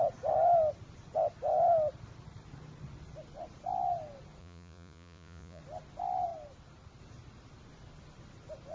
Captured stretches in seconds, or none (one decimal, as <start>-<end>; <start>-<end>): 0.0-4.4; 5.6-8.7

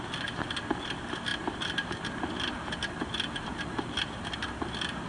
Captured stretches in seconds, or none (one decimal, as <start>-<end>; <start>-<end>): 0.0-5.1

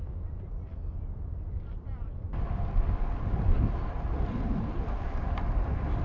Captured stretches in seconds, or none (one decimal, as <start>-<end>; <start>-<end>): 0.0-6.0

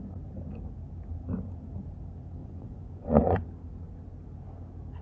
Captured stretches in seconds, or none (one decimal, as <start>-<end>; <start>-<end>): 0.0-2.4; 3.5-5.0

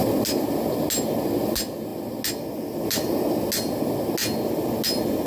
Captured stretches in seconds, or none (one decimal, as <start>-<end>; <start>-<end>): 0.0-5.3